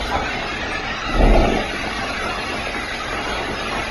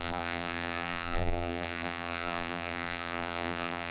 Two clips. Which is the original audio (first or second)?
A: first